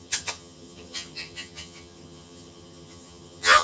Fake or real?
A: fake